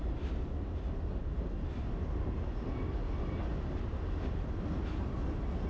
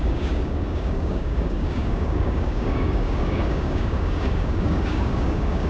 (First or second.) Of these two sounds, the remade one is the second